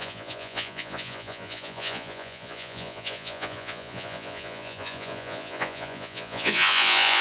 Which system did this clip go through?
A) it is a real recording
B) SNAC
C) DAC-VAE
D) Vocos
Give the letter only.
D